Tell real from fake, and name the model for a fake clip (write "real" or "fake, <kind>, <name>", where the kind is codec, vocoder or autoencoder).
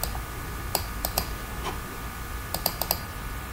real